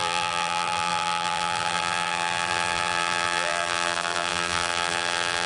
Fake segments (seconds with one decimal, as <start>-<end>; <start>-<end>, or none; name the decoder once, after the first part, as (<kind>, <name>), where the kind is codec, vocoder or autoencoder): 0.0-5.5 (vocoder, BigVGAN v2)